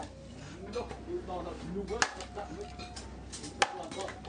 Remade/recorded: recorded